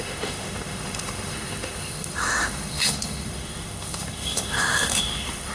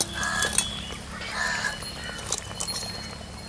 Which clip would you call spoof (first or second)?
first